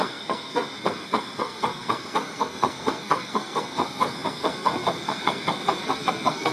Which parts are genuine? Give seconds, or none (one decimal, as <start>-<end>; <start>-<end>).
none